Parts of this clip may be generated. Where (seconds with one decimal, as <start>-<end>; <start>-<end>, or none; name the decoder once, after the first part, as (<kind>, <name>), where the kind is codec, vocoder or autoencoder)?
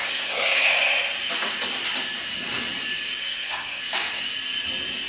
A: 0.0-0.7 (codec, SNAC); 3.2-3.8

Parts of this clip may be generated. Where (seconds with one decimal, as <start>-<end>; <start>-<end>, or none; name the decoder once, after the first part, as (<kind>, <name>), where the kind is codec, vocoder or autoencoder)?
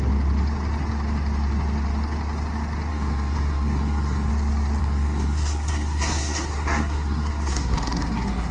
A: 2.9-4.3 (codec, SNAC); 4.8-8.5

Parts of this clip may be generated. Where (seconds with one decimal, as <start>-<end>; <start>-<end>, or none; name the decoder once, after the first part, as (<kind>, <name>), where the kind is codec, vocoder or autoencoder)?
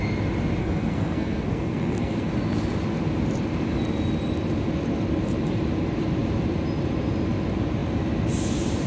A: 0.6-2.3 (codec, SNAC)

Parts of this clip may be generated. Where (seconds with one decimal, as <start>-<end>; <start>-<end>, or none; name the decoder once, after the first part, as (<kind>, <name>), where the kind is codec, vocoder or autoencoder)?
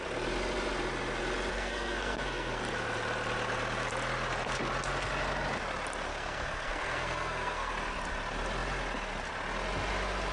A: 1.5-2.6 (codec, SNAC); 6.1-7.7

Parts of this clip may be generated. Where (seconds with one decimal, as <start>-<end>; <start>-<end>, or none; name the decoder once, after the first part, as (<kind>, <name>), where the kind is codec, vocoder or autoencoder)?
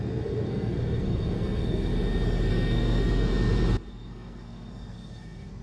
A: 0.0-1.9 (codec, SNAC); 2.5-3.3; 3.9-5.6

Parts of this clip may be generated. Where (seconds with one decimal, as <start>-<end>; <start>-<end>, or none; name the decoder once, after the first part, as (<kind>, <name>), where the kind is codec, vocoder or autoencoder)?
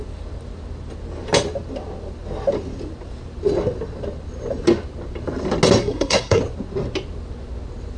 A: 5.8-6.4 (codec, SNAC)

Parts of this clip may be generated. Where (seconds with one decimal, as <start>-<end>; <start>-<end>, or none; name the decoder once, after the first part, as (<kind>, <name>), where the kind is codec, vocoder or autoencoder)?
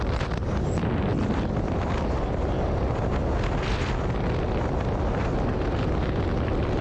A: none